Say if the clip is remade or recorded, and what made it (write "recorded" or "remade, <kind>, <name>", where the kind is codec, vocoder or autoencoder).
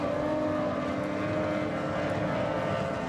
recorded